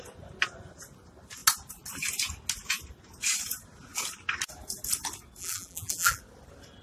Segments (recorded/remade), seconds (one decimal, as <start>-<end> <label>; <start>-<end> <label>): 0.0-5.4 recorded; 5.4-6.2 remade; 6.2-6.8 recorded